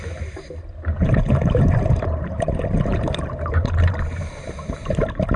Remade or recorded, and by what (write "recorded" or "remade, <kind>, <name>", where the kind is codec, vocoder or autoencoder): remade, vocoder, BigVGAN v2